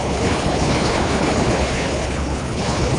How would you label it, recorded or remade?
remade